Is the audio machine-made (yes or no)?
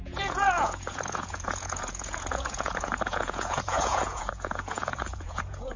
yes